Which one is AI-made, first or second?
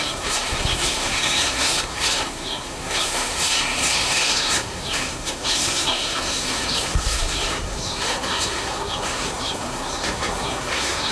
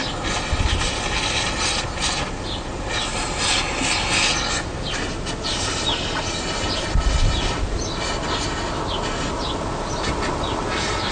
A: first